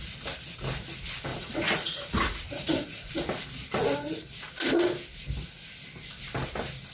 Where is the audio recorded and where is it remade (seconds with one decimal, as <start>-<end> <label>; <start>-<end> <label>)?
0.0-1.3 recorded; 1.3-3.1 remade; 3.1-6.9 recorded